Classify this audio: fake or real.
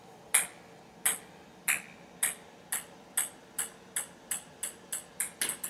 real